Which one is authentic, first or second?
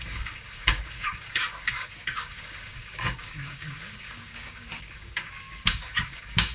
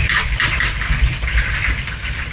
second